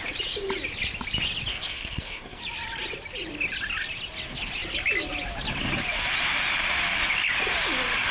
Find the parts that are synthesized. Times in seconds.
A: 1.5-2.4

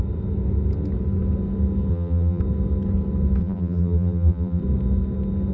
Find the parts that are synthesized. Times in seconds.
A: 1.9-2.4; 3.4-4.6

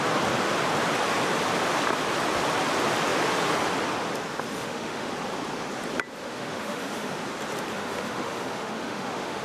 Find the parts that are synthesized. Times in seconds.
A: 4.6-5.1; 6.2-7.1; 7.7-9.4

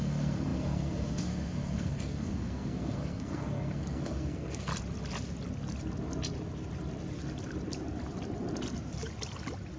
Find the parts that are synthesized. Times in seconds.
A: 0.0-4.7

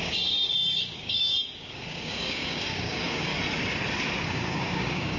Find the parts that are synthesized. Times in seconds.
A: 0.0-3.3; 4.2-5.2

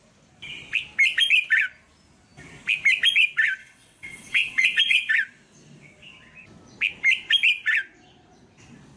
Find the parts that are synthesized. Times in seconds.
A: 3.6-5.1

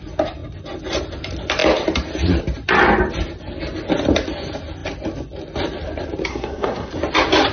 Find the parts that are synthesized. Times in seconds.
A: 6.3-6.9